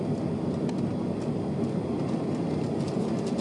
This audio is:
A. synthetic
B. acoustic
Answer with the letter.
B